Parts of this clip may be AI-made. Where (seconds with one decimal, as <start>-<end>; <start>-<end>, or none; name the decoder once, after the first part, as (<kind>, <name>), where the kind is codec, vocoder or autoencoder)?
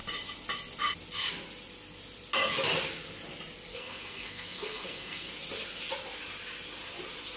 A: 3.7-5.3 (codec, SNAC)